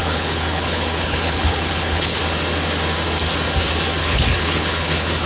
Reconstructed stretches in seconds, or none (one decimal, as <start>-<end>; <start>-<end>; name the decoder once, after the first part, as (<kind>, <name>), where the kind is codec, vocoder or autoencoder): 0.0-2.2 (codec, HILCodec); 4.0-5.3